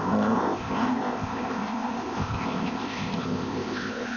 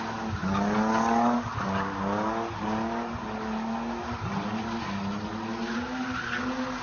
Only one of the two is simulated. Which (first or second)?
first